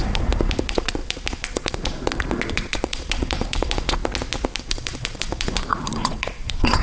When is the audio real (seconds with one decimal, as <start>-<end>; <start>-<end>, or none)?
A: 4.0-4.6